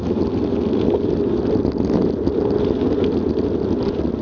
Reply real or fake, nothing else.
real